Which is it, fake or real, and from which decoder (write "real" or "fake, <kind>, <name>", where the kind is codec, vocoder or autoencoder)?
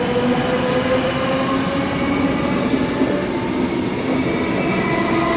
real